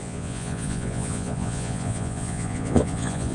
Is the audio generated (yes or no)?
yes